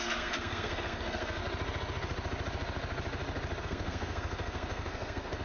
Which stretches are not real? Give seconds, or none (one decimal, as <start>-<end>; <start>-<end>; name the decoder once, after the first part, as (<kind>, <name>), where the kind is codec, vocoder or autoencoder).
0.0-1.4 (codec, SNAC); 3.6-5.4